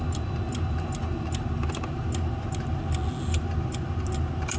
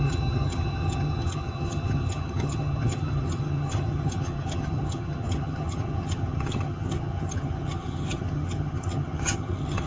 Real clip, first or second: first